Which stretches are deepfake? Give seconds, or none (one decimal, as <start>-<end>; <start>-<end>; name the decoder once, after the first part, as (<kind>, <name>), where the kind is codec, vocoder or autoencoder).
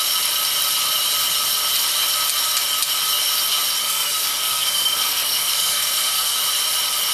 3.8-6.4 (codec, SNAC)